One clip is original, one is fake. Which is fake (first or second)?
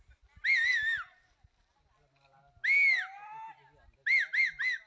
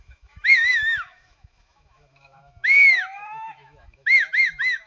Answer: second